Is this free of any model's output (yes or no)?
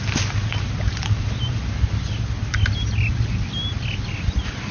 yes